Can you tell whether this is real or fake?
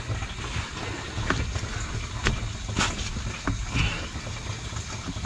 real